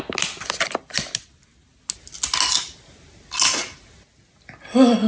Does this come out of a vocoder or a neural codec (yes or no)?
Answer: no